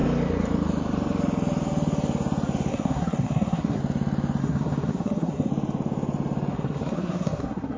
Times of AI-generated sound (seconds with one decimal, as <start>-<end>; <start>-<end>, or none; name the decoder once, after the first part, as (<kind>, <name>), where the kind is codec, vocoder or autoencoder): 2.7-3.8 (codec, SNAC); 4.4-5.5; 6.5-7.8

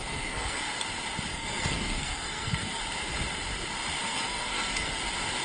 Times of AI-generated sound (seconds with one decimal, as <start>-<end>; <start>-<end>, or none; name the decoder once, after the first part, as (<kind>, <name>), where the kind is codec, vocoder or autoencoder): 0.0-0.7 (codec, SNAC); 1.3-2.8; 4.0-5.0

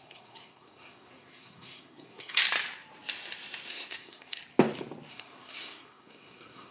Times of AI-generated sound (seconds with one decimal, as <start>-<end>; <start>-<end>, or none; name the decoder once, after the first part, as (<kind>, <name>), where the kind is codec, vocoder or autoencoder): 0.0-2.4 (codec, SNAC); 3.7-4.4; 5.1-6.7